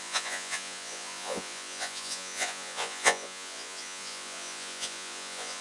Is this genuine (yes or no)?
no